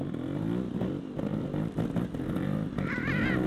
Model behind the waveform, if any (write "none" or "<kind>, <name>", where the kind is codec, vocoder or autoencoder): none